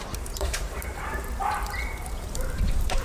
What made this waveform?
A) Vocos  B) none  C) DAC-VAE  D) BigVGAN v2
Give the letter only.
D